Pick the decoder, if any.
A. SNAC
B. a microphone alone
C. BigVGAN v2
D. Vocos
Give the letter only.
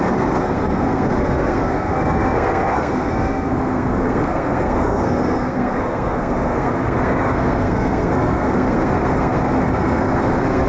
A